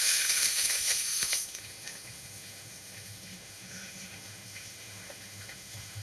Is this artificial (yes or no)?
yes